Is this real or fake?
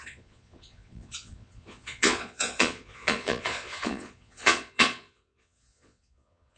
fake